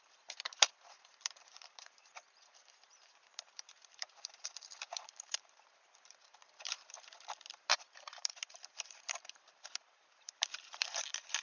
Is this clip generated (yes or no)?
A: yes